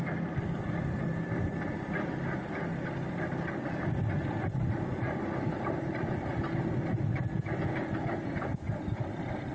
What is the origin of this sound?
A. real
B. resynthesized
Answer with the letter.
A